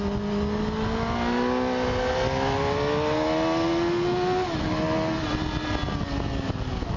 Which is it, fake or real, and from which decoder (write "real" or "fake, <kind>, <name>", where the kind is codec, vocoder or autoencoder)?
real